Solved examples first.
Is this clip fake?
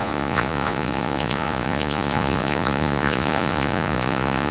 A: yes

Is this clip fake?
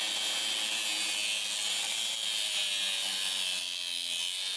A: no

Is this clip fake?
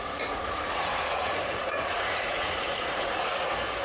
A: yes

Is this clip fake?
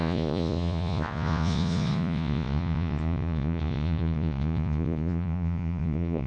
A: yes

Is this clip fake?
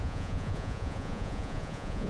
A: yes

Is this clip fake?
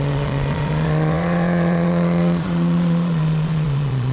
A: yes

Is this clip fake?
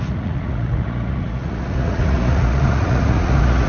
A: yes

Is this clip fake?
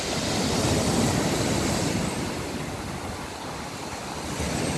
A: no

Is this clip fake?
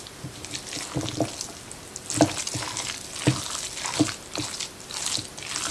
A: no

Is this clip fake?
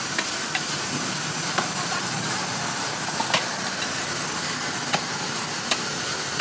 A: no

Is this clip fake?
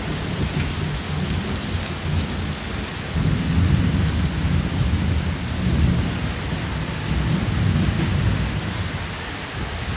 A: no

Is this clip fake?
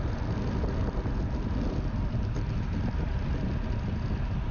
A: no